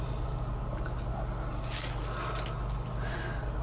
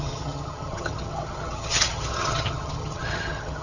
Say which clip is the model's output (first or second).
second